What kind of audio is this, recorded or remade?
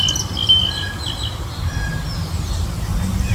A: recorded